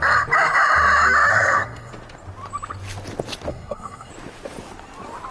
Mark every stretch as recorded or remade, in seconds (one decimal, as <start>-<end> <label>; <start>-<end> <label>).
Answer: 0.0-1.3 recorded; 1.3-1.9 remade; 1.9-3.5 recorded; 3.5-4.1 remade; 4.1-5.3 recorded